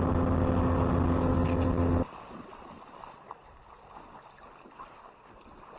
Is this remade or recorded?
recorded